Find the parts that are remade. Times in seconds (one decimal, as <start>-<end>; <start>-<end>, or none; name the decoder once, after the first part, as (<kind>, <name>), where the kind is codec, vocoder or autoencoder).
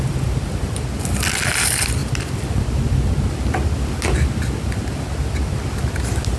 none